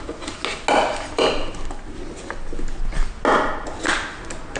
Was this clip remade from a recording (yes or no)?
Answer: no